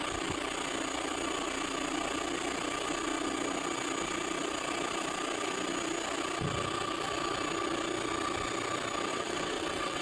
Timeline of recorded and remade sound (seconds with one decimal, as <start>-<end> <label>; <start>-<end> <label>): 0.0-9.1 recorded; 9.1-10.0 remade